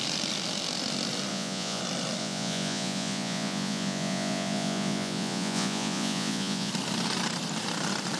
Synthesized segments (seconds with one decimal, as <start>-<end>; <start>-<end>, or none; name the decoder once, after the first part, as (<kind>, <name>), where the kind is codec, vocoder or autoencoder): 1.3-1.8 (vocoder, Vocos); 2.2-6.7

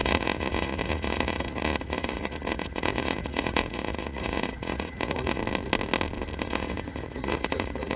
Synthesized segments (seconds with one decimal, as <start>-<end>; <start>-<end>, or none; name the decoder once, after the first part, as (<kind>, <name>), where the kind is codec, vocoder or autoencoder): 0.0-5.4 (vocoder, Vocos); 6.4-8.0

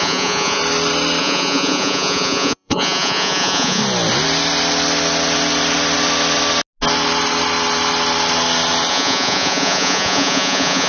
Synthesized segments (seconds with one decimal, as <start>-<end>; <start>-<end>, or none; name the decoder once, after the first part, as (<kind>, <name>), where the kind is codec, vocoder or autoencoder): 0.0-0.6 (vocoder, Vocos); 1.2-3.8; 8.9-10.9

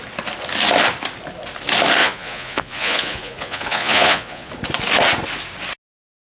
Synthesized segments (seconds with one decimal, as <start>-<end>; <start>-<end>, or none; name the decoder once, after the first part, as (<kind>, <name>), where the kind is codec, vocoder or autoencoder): 2.0-4.5 (vocoder, Vocos)

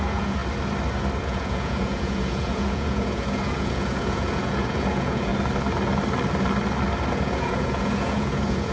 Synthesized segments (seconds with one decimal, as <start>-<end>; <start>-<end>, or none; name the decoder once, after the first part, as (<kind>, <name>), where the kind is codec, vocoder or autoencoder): 0.0-0.4 (vocoder, Vocos); 1.2-5.3; 7.1-8.7